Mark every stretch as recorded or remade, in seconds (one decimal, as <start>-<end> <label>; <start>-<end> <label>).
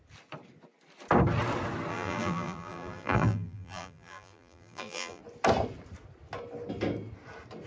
0.0-1.9 recorded; 1.9-5.2 remade; 5.2-7.7 recorded